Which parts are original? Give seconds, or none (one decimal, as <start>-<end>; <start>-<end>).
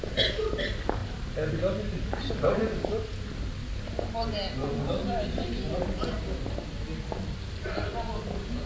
0.0-8.7